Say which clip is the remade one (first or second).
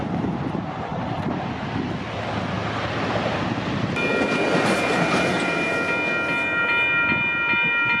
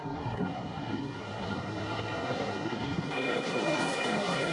second